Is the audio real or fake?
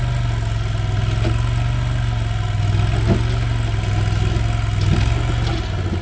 real